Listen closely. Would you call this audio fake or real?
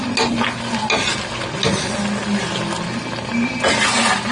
real